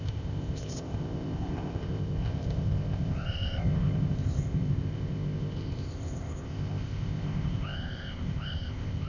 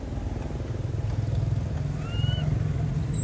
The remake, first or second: first